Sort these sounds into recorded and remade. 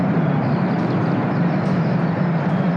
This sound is recorded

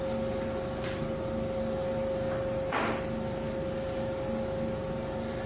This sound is recorded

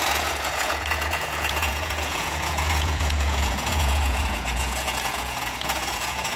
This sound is remade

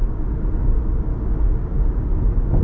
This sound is recorded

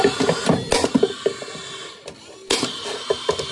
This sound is recorded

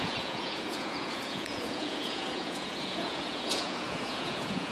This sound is remade